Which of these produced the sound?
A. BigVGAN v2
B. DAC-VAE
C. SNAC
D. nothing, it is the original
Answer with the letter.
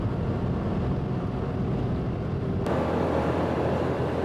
A